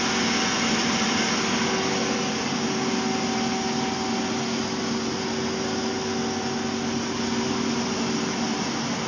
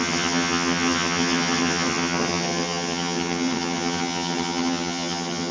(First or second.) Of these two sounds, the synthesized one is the second